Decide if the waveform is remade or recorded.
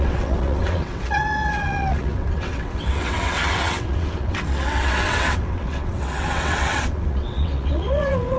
remade